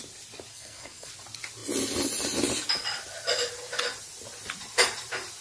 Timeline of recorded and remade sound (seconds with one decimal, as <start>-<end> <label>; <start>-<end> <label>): 0.0-0.5 recorded; 0.5-1.1 remade; 1.1-5.4 recorded